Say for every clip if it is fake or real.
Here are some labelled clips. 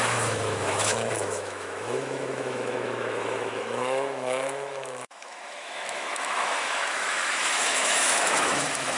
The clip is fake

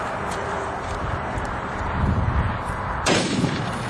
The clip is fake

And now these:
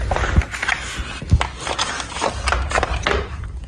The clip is real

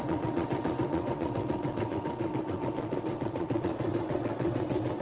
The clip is fake